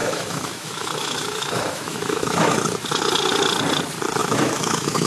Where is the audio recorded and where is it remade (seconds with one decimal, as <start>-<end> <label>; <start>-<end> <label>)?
0.0-2.6 remade; 2.6-4.2 recorded; 4.2-5.1 remade